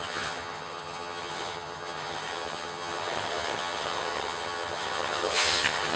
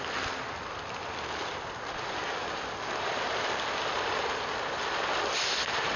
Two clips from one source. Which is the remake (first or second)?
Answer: first